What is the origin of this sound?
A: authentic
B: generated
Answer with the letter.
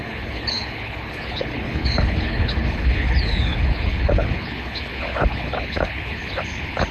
B